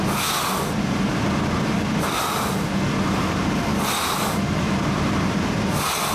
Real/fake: real